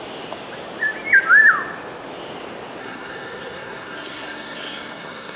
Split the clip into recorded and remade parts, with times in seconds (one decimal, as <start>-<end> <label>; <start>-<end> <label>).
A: 0.0-2.8 recorded; 2.8-5.4 remade